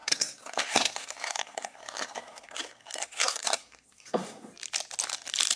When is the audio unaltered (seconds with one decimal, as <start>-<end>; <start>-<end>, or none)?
4.5-5.6